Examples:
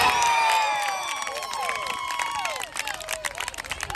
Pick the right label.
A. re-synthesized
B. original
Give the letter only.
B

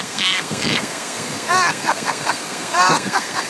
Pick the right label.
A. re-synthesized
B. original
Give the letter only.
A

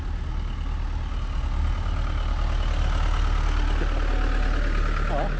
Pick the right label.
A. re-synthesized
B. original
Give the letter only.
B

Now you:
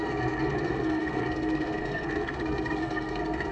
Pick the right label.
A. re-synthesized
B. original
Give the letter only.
A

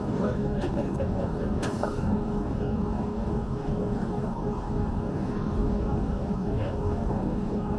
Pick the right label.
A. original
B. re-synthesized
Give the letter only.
B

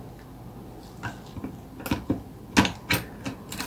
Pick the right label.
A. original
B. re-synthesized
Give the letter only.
A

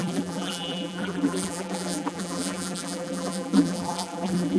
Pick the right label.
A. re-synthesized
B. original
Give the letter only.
A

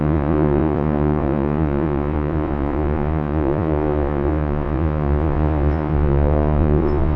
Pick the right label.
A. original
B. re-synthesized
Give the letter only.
B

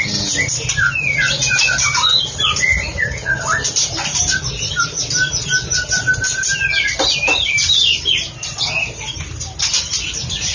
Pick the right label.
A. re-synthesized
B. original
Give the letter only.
B